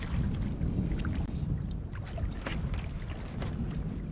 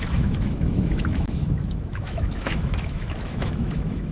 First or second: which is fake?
second